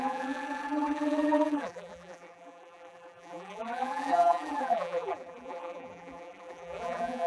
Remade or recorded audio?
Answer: remade